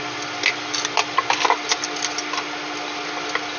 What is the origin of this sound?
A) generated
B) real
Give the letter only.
B